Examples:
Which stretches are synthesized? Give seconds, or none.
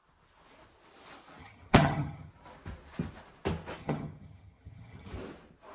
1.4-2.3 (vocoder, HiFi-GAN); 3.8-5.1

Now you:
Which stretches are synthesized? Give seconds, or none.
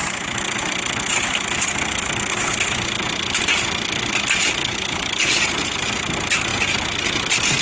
4.6-5.4 (codec, HILCodec)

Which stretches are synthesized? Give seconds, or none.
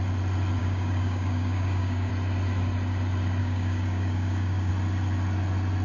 0.6-2.1 (codec, DAC); 3.4-4.7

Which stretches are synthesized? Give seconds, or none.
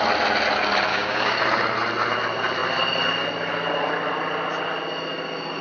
0.9-1.4 (codec, DAC)